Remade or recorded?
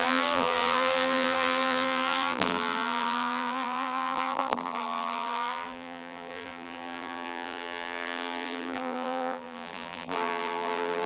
remade